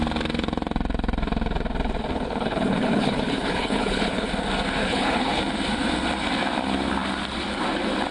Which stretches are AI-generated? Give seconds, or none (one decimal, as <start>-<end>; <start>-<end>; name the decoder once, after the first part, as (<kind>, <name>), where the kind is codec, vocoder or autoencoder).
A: 2.1-4.3 (codec, HILCodec); 4.8-5.4